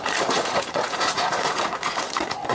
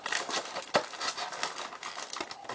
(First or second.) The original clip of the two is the second